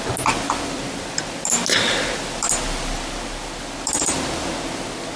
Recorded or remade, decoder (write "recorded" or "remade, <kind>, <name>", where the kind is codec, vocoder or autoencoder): recorded